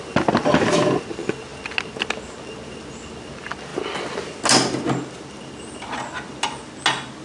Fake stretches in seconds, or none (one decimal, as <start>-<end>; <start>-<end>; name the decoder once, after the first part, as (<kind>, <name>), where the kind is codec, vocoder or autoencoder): none